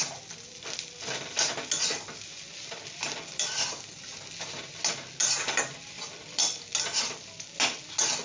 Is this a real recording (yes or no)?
yes